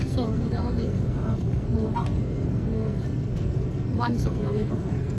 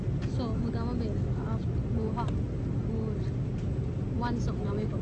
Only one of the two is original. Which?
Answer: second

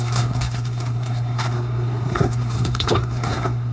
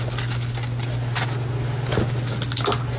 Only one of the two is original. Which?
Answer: second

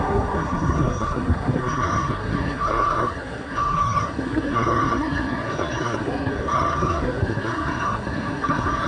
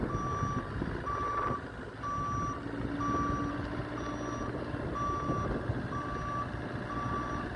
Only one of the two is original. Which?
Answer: second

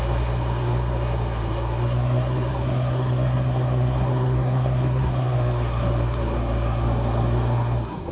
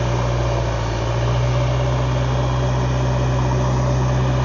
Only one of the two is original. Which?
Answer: second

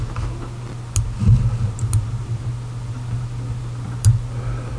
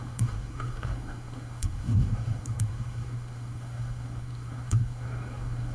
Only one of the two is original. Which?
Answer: first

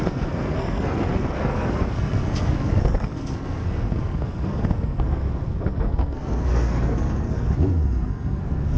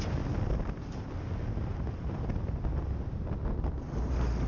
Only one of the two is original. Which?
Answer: second